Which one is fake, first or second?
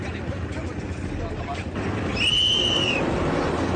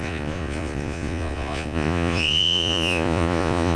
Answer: second